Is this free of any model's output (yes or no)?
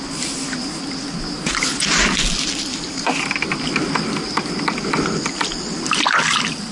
yes